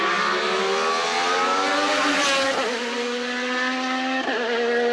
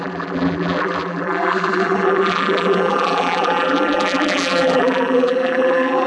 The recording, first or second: first